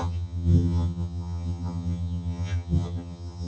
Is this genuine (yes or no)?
no